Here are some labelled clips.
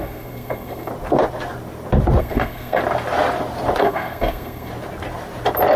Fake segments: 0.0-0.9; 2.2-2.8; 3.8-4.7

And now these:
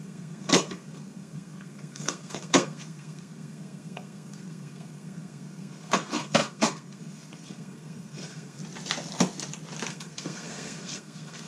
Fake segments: 0.0-8.6; 9.9-11.5

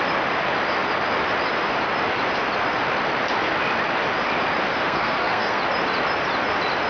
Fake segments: 4.7-5.6